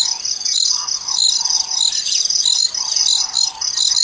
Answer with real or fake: real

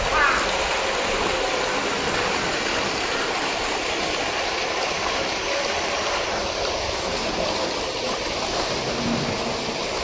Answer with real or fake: real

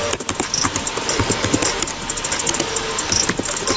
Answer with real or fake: real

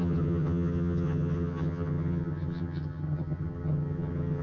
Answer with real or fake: fake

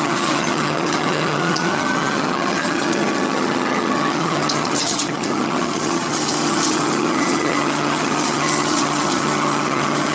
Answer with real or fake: fake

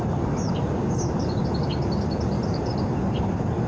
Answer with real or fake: real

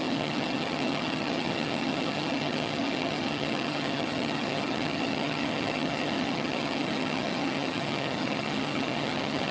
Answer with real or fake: fake